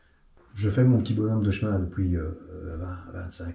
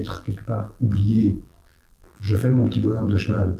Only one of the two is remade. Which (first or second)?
second